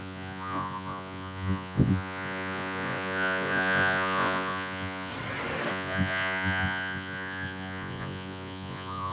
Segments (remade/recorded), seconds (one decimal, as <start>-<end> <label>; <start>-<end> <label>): 0.0-5.1 remade; 5.1-5.7 recorded; 5.7-9.1 remade